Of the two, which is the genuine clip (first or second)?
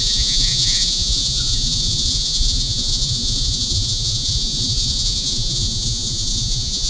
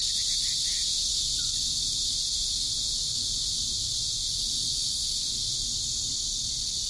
second